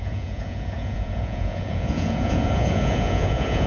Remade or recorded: remade